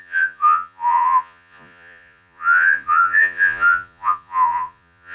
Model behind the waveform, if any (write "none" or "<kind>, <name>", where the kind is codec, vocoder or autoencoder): vocoder, Vocos